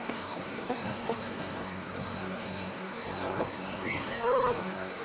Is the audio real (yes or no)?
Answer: no